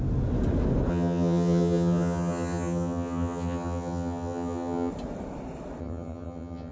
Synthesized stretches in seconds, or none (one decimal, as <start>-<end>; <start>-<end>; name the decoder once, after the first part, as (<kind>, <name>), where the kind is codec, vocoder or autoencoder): 0.9-4.9 (vocoder, HiFi-GAN); 5.8-6.7